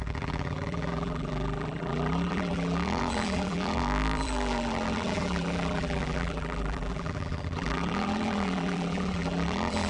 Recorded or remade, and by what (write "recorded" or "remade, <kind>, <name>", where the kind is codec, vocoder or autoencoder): remade, vocoder, BigVGAN v2